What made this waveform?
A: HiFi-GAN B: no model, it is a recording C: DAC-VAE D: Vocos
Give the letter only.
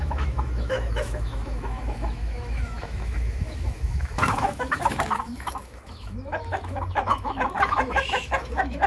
C